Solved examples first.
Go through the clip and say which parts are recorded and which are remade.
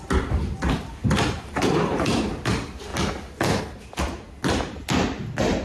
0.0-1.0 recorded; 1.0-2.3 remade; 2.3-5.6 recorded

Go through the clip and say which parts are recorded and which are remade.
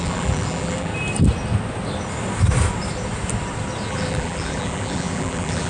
0.0-0.9 remade; 0.9-3.9 recorded; 3.9-5.7 remade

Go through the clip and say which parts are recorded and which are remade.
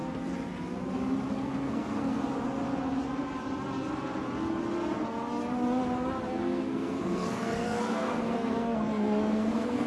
0.0-1.3 recorded; 1.3-2.2 remade; 2.2-6.3 recorded; 6.3-9.9 remade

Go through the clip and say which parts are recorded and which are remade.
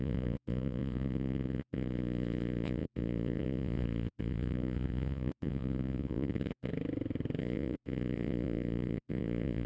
0.0-6.7 remade; 6.7-7.4 recorded; 7.4-9.7 remade